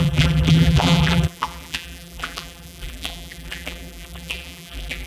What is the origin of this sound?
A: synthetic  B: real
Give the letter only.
A